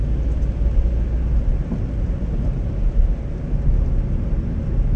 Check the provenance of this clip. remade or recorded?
recorded